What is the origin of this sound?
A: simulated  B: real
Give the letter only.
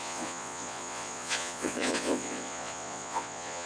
A